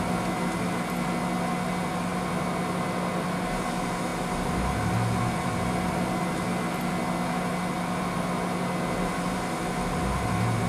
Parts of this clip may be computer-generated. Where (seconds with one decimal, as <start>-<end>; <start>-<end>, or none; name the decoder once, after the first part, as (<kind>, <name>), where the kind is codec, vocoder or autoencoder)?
none